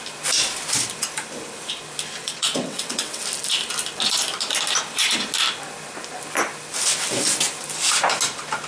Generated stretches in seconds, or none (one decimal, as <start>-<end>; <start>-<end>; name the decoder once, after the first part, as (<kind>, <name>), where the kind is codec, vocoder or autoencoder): 2.2-3.2 (vocoder, WaveNeXt)